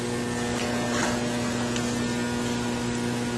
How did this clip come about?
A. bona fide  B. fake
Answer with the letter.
A